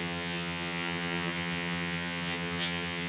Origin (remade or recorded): remade